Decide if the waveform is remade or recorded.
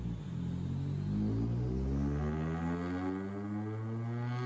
recorded